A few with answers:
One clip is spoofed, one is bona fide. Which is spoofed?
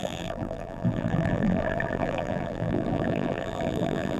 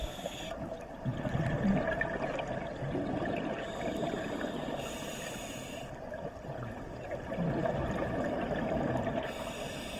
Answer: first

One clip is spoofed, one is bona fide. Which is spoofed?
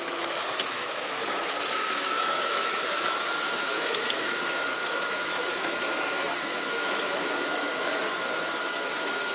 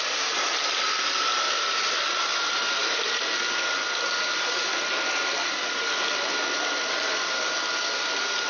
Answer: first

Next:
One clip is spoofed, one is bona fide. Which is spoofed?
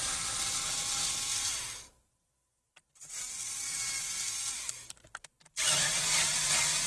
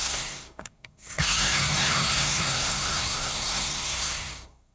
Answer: second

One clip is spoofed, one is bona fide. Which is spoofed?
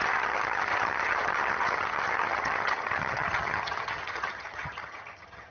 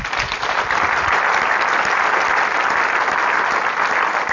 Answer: first